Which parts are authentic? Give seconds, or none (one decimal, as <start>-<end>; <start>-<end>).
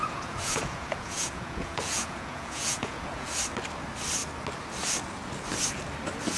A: 3.3-6.4